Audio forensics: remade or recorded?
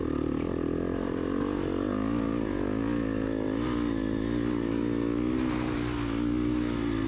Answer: recorded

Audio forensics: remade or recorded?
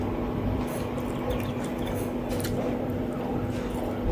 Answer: recorded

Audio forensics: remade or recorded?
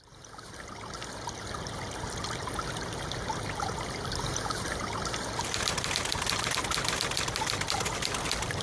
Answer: recorded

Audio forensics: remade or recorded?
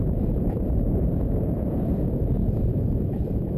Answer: remade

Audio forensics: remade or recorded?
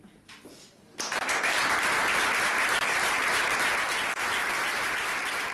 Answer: recorded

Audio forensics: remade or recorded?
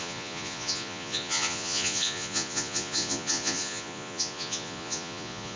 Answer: remade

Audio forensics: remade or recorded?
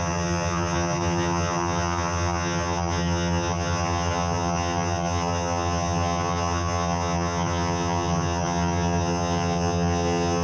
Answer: remade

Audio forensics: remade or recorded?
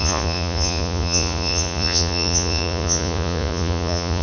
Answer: remade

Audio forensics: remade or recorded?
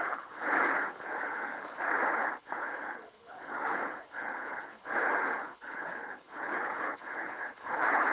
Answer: remade